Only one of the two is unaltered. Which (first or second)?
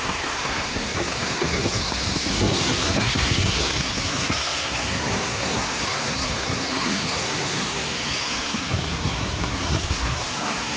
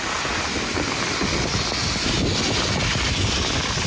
second